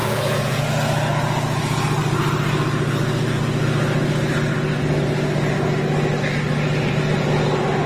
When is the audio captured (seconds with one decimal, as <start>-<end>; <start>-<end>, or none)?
0.6-7.9